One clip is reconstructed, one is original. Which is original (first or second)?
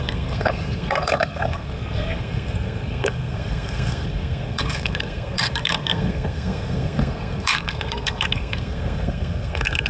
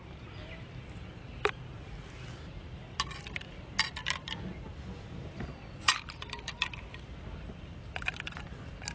second